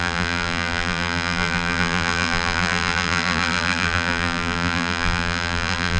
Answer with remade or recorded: remade